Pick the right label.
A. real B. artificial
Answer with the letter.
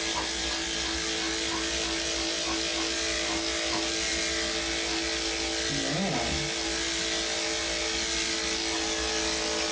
A